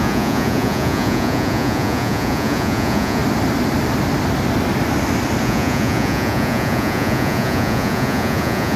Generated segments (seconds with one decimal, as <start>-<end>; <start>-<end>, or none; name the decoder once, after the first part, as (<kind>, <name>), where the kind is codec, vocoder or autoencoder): 0.0-3.2 (vocoder, Vocos); 5.4-8.8